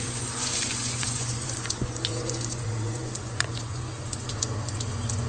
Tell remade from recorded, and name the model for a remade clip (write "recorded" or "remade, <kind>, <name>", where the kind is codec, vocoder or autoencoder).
remade, vocoder, Vocos